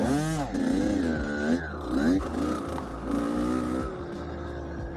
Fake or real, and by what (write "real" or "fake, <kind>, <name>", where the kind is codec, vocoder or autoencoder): real